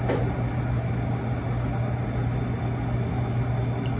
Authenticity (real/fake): real